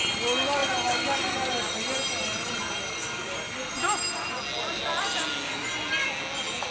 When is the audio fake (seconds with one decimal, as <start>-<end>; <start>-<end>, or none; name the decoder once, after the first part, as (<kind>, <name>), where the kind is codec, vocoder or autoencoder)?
none